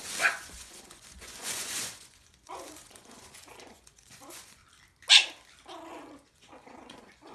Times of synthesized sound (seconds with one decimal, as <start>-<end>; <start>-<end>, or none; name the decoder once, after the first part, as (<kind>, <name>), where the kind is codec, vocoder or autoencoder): 0.0-4.6 (vocoder, Vocos); 5.9-7.3